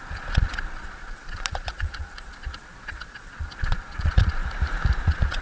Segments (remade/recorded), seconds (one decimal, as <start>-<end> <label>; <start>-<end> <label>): 0.0-4.4 remade; 4.4-5.0 recorded; 5.0-5.4 remade